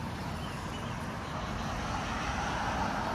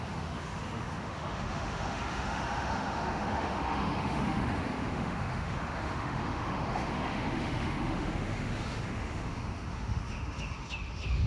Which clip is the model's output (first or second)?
second